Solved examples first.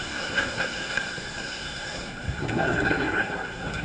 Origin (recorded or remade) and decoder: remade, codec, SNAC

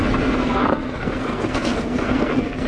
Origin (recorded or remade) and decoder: remade, codec, SNAC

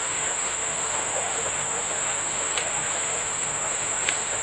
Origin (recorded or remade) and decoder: remade, autoencoder, DAC-VAE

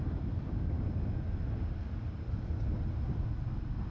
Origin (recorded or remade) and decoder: recorded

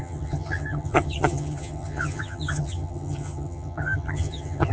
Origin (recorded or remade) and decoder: remade, vocoder, HiFi-GAN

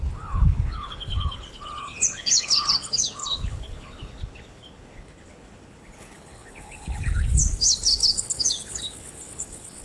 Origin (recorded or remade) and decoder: remade, codec, HILCodec